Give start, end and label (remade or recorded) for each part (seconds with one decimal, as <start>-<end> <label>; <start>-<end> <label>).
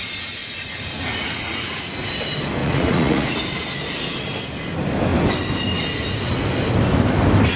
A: 0.0-0.4 recorded; 0.4-2.1 remade; 2.1-2.6 recorded; 2.6-3.4 remade; 3.4-7.6 recorded